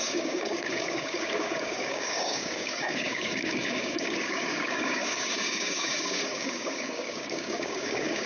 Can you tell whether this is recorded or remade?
remade